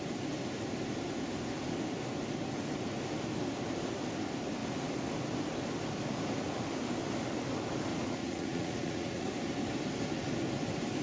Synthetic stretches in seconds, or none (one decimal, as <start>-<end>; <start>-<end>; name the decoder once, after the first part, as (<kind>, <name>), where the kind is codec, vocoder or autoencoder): 7.9-9.3 (vocoder, Vocos)